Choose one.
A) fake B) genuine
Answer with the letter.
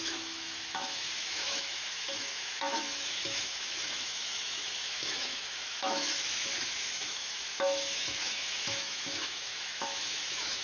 A